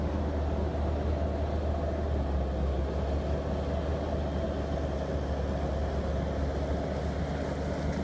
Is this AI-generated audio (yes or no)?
no